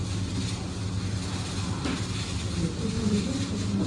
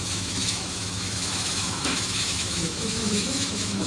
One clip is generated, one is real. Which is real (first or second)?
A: first